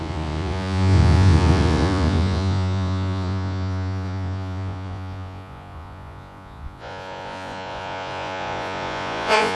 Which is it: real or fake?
fake